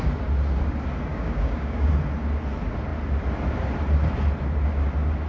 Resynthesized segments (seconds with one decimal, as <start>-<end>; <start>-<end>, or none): 1.1-1.9